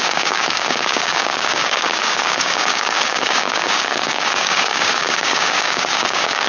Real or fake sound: fake